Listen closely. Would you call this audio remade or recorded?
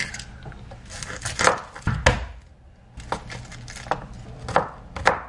recorded